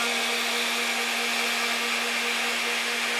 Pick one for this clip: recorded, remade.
recorded